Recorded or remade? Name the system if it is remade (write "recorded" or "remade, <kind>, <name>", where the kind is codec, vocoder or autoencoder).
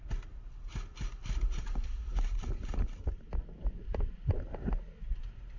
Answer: recorded